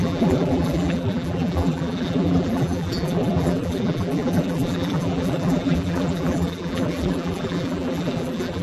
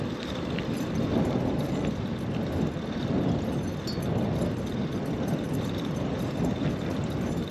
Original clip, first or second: second